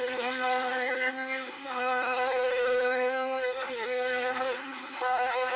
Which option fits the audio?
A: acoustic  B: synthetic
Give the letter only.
B